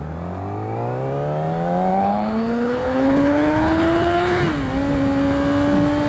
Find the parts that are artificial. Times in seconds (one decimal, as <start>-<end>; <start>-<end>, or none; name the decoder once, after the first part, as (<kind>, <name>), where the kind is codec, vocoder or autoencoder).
1.9-4.4 (codec, HILCodec)